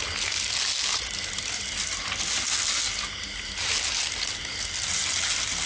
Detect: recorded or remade recorded